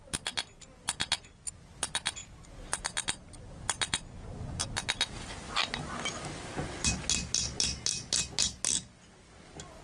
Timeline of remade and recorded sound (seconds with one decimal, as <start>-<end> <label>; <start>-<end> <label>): 0.0-9.8 recorded